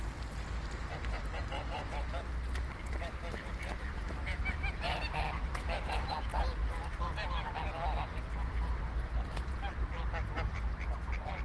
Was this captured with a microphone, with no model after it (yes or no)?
yes